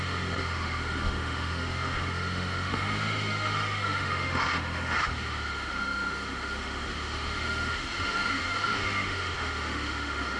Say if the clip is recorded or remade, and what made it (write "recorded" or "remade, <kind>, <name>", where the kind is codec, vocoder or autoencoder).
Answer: remade, autoencoder, DAC-VAE